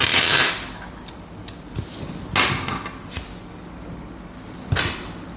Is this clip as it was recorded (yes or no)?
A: yes